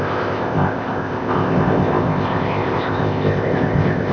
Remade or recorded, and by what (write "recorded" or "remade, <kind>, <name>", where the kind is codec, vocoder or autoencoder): remade, codec, ZipCodec